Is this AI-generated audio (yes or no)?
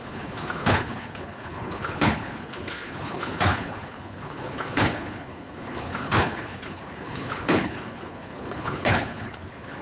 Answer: yes